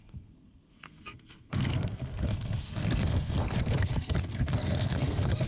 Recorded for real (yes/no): no